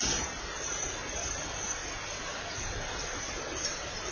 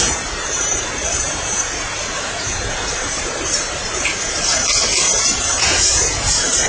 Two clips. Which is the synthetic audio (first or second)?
second